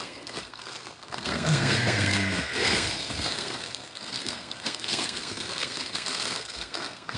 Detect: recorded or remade remade